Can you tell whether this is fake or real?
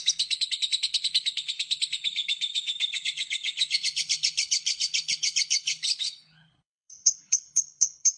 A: fake